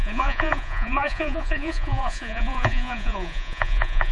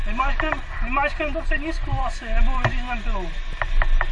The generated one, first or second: first